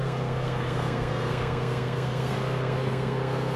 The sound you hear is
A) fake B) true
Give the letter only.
A